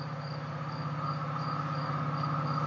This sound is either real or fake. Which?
real